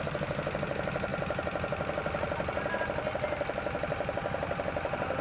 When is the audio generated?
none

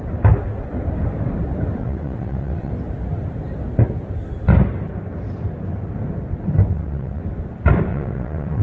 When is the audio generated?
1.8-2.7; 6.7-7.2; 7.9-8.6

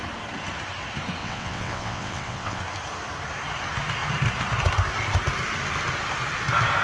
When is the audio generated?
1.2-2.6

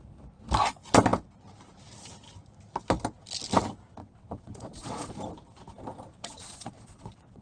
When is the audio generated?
4.0-5.1; 6.1-7.4

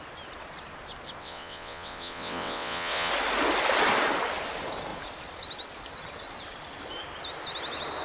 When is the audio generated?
1.2-3.1

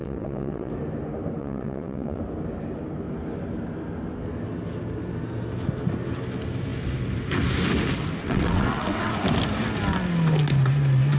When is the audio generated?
0.0-0.7; 1.4-2.2; 8.2-9.1

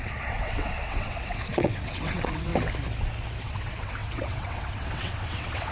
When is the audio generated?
0.0-2.5; 3.4-5.7